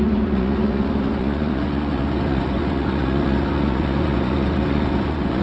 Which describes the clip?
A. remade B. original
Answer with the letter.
A